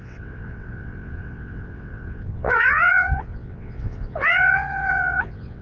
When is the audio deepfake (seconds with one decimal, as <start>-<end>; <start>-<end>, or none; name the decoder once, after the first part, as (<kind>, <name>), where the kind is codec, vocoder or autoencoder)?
0.0-5.6 (vocoder, WaveNeXt)